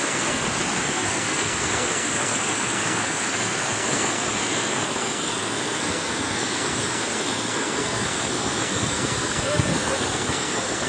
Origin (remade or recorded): remade